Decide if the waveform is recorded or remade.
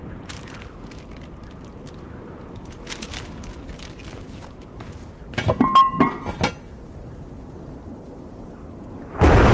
recorded